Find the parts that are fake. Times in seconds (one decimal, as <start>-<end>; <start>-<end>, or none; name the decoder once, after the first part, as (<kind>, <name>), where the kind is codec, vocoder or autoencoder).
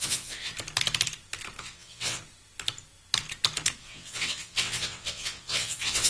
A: 0.0-0.5 (vocoder, WaveNeXt); 1.6-2.2; 3.8-6.1